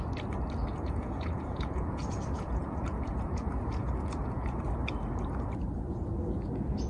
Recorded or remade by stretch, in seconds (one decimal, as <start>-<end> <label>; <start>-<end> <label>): 0.0-0.7 recorded; 0.7-4.6 remade; 4.6-6.9 recorded